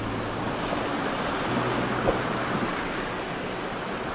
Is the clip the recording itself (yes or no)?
yes